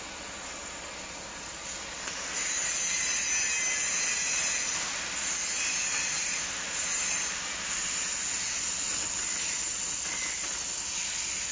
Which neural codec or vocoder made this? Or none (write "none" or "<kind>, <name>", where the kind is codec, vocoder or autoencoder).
none